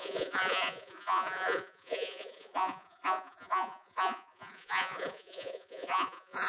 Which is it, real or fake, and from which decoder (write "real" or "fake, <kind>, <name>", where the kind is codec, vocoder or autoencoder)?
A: fake, vocoder, Vocos